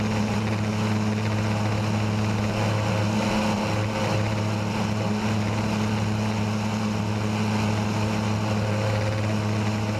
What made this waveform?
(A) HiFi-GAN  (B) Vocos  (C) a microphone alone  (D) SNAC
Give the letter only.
C